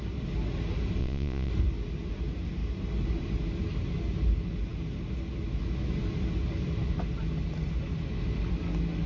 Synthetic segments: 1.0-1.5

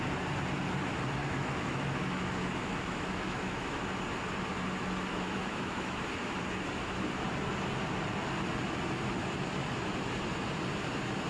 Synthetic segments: 1.2-3.9; 5.1-6.4